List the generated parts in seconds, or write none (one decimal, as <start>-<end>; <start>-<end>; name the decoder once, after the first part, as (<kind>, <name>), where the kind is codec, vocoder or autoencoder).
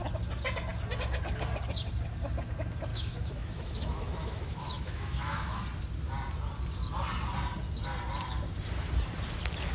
2.9-5.6 (autoencoder, DAC-VAE)